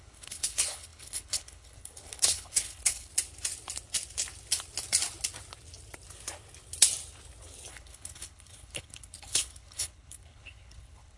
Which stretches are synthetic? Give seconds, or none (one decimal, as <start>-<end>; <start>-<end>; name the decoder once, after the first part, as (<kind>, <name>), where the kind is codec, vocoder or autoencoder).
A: 0.0-3.1 (codec, HILCodec); 7.7-11.2